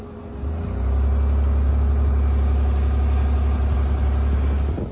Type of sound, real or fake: real